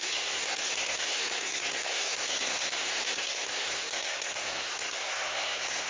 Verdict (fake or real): fake